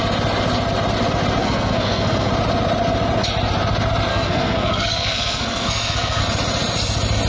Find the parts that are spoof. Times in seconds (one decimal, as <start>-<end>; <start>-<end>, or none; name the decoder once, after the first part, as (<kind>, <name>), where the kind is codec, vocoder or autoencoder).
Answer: 1.4-2.3 (codec, SNAC); 4.1-6.2